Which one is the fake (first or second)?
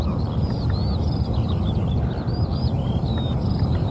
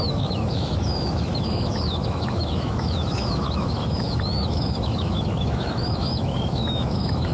second